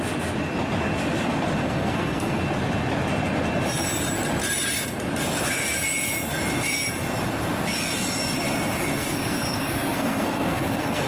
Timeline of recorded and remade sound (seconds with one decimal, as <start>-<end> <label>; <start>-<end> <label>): 0.0-1.6 recorded; 1.6-2.4 remade; 2.4-9.0 recorded; 9.0-11.1 remade